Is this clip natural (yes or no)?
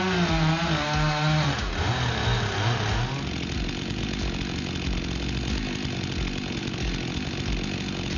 yes